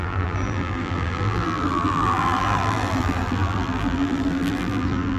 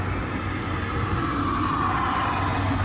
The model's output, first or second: first